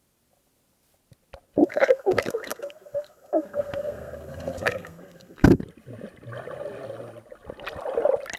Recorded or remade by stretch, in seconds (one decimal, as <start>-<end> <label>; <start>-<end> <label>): 0.0-1.6 recorded; 1.6-5.6 remade; 5.6-8.4 recorded